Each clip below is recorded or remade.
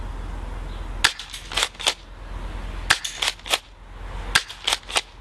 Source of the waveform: recorded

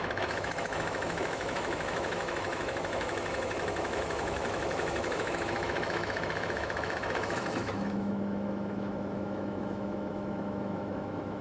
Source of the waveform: remade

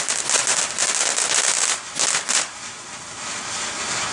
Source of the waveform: recorded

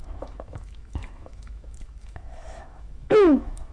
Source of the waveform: remade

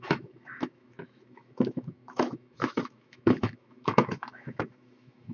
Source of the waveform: remade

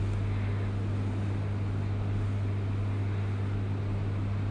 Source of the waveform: recorded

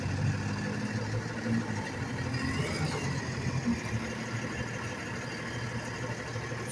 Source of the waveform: recorded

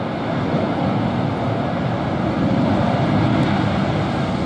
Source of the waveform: recorded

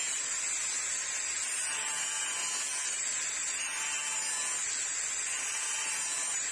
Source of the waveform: recorded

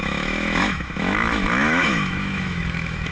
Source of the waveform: remade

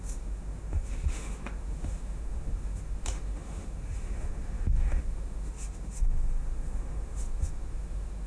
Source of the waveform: remade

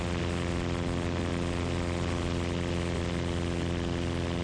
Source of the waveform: recorded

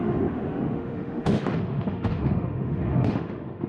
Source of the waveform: remade